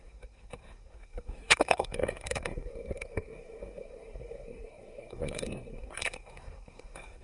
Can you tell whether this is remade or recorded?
remade